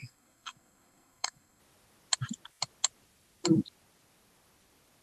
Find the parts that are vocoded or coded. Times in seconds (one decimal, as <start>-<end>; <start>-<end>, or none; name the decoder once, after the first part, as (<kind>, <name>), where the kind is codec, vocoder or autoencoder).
0.0-1.6 (codec, SNAC)